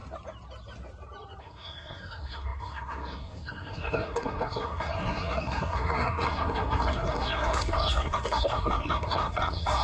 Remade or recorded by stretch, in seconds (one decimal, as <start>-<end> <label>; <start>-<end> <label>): 0.0-1.4 recorded; 1.4-9.8 remade